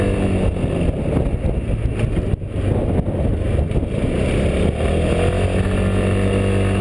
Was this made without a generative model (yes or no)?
yes